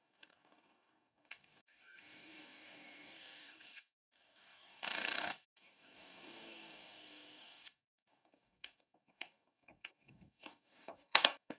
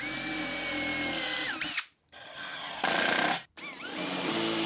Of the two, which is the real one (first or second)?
second